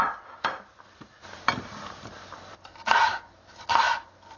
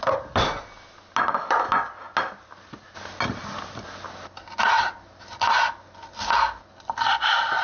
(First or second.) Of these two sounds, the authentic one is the second